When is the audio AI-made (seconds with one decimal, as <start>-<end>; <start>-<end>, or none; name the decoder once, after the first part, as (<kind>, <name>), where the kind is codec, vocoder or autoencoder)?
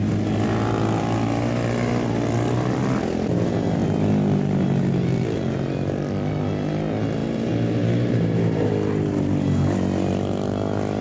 7.2-8.7 (vocoder, BigVGAN v2)